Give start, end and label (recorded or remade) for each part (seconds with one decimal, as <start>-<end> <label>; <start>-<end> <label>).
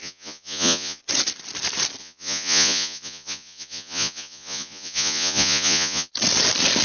0.0-1.0 remade; 1.0-2.0 recorded; 2.0-6.1 remade; 6.1-6.8 recorded